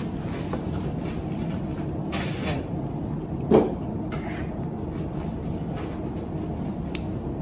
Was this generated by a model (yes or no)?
no